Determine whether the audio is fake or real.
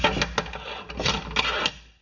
real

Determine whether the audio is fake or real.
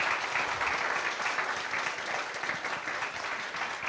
real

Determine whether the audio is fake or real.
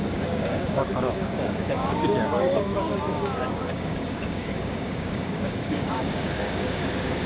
fake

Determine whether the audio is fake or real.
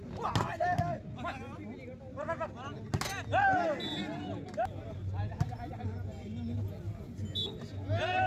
real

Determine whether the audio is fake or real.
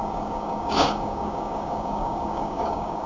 fake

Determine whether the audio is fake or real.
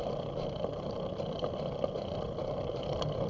real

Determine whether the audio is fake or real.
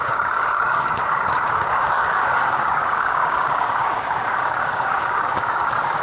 fake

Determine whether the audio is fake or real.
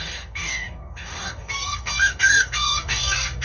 fake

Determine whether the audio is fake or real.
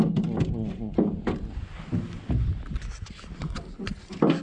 real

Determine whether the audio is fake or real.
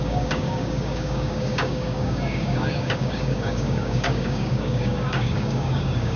fake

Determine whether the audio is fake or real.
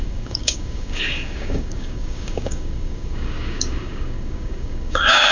fake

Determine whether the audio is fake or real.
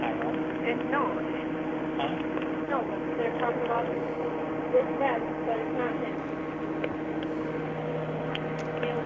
real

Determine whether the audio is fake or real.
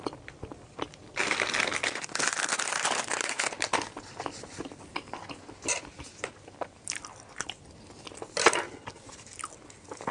real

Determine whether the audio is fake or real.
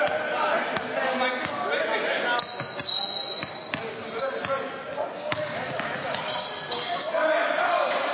real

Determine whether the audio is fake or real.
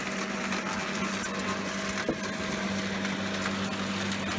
real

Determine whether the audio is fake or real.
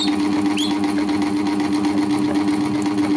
real